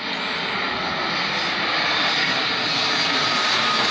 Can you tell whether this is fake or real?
real